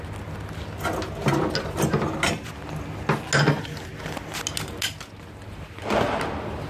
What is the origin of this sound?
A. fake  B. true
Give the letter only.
B